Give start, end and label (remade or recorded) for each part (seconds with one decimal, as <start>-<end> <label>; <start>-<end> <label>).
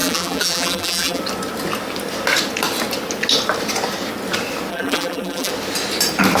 0.0-1.2 remade; 1.2-4.7 recorded; 4.7-5.5 remade; 5.5-6.4 recorded